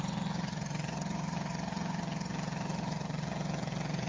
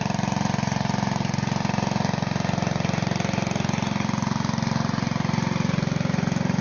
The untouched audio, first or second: second